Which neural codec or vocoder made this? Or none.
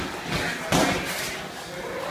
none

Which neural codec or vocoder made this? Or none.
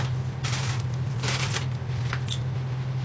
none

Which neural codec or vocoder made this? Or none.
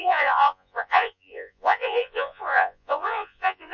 vocoder, Vocos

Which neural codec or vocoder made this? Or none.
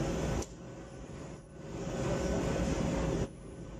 none